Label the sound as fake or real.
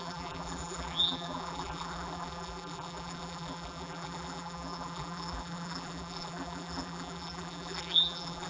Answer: fake